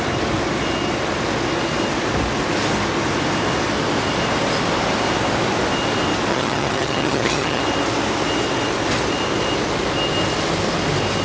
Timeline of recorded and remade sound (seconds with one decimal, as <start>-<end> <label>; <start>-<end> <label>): 0.0-6.3 recorded; 6.3-7.6 remade; 7.6-11.2 recorded